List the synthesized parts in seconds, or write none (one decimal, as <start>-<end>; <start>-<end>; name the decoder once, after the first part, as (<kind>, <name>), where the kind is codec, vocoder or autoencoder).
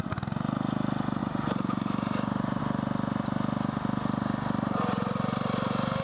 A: 1.2-2.6 (vocoder, BigVGAN v2)